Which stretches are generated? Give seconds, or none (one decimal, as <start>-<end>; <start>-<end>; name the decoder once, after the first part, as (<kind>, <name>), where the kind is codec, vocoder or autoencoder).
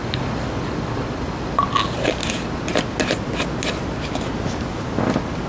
none